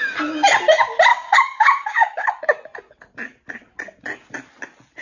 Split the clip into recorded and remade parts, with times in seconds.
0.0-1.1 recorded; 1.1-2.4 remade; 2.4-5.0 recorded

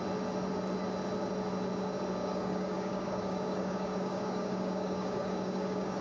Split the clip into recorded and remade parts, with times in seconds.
0.0-2.2 recorded; 2.2-6.0 remade

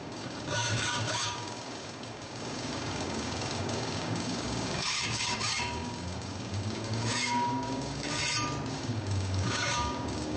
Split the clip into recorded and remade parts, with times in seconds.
0.0-8.2 remade; 8.2-8.7 recorded; 8.7-10.4 remade

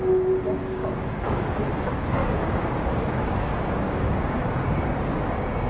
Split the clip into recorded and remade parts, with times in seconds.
0.0-0.6 recorded; 0.6-1.5 remade; 1.5-2.2 recorded; 2.2-5.7 remade

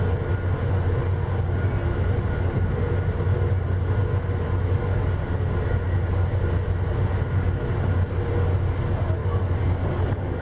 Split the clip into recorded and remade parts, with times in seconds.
0.0-9.2 recorded; 9.2-10.4 remade

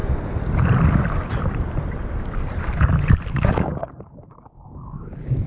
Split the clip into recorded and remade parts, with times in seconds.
0.0-3.3 recorded; 3.3-5.5 remade

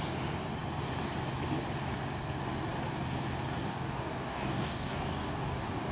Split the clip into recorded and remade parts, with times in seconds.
0.0-3.7 recorded; 3.7-5.9 remade

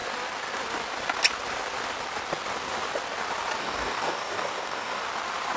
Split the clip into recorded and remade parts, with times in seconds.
0.0-3.6 recorded; 3.6-5.0 remade; 5.0-5.6 recorded